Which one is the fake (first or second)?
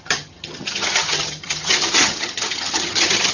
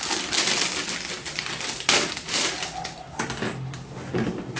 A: first